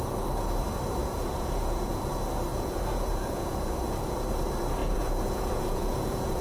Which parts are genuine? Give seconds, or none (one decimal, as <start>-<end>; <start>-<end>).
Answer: 0.0-1.0; 2.1-2.5; 4.3-4.8